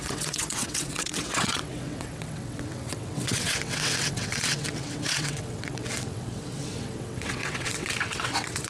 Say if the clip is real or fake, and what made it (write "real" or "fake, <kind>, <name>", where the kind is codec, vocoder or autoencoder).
fake, vocoder, WaveNeXt